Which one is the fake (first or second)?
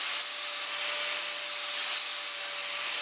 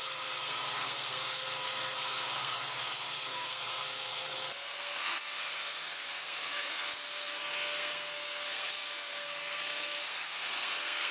second